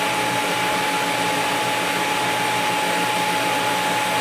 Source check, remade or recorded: recorded